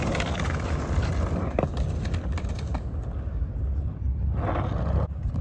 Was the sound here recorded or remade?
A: recorded